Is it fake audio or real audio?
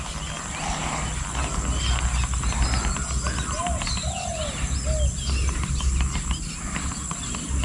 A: real